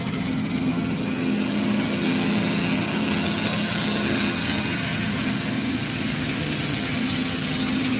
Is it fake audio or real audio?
fake